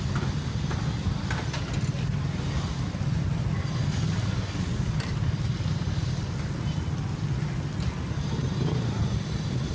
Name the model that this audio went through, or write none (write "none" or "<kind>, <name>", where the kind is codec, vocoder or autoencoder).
none